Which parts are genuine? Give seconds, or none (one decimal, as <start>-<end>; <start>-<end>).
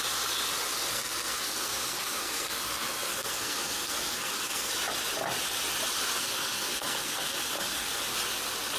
0.0-0.9; 4.7-6.2; 8.0-8.8